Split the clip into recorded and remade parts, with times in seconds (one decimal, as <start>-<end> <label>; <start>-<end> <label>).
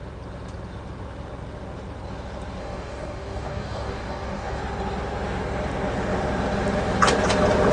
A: 0.0-2.6 recorded; 2.6-4.6 remade; 4.6-7.7 recorded